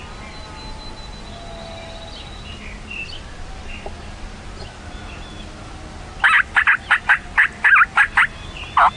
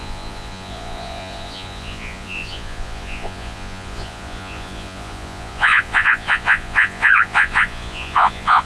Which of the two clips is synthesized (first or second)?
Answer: second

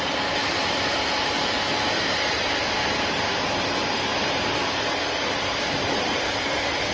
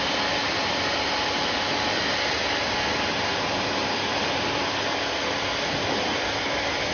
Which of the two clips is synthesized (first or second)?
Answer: first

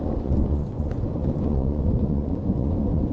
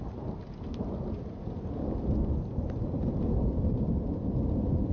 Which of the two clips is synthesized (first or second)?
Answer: first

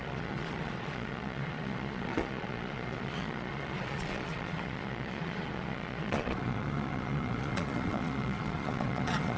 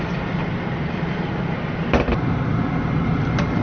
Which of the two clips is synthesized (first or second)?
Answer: first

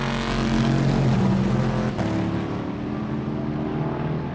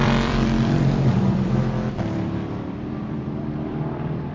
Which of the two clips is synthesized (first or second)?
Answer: second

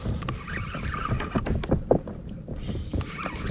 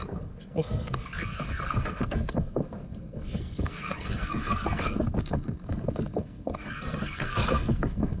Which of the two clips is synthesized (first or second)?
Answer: second